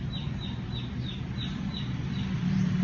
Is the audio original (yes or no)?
yes